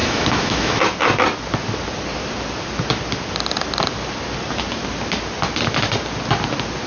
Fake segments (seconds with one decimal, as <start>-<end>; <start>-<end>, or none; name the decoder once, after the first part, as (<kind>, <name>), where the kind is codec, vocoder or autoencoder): 0.0-0.8 (autoencoder, DAC-VAE)